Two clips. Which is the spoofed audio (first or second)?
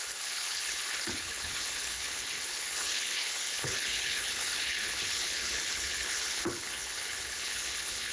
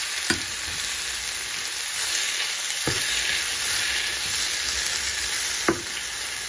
first